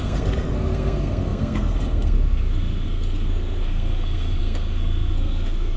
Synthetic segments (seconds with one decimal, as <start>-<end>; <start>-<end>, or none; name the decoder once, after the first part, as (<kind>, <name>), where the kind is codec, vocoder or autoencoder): 0.0-5.8 (codec, SNAC)